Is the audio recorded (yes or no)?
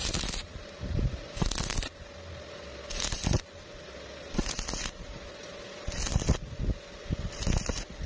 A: yes